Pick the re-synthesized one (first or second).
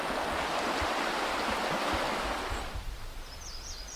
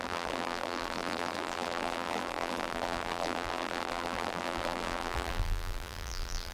second